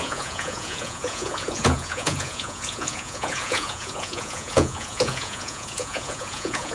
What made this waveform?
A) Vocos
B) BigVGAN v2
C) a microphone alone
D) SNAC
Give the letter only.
A